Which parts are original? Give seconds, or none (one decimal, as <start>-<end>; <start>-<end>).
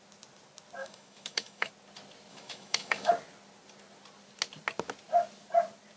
0.0-0.8; 1.7-2.3; 3.1-6.0